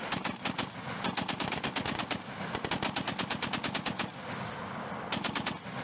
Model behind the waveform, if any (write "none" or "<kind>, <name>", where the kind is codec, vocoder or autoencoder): none